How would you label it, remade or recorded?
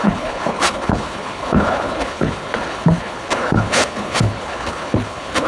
remade